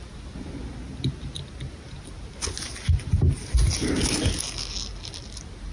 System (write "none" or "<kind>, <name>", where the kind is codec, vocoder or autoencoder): none